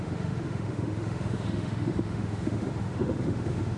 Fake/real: fake